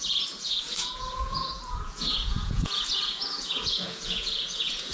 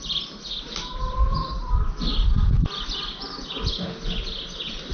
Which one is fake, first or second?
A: first